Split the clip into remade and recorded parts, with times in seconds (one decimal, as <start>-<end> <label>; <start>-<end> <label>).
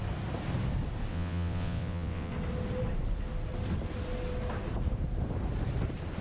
0.0-1.1 recorded; 1.1-2.3 remade; 2.3-6.2 recorded